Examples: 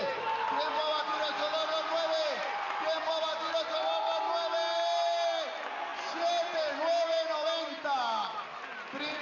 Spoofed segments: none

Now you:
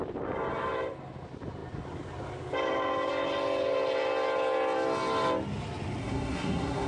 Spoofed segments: 6.0-6.9 (codec, SNAC)

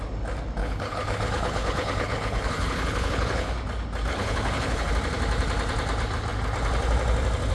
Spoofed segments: 0.6-3.5 (codec, HILCodec); 4.1-4.9

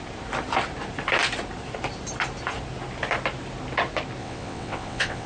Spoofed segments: 4.2-5.3 (vocoder, WaveNeXt)

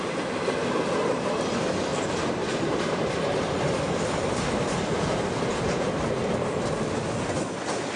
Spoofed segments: 1.9-6.2 (vocoder, BigVGAN v2)